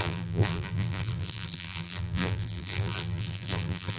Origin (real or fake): fake